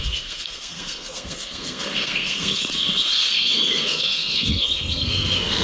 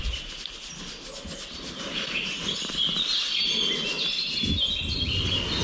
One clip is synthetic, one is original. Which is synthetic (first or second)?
first